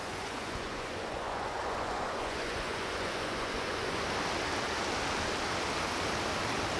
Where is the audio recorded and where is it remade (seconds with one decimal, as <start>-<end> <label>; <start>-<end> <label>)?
0.0-4.0 remade; 4.0-6.8 recorded